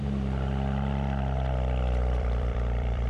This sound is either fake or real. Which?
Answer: fake